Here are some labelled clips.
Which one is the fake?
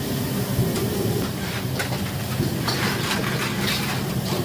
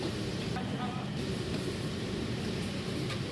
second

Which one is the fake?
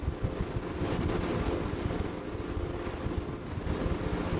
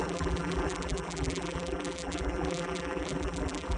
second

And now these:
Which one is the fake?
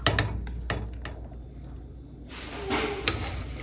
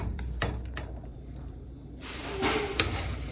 second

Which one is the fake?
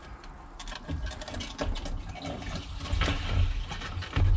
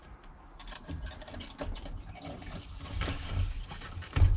second